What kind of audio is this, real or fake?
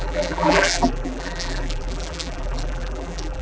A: fake